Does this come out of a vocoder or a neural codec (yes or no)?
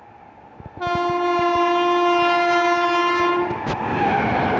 no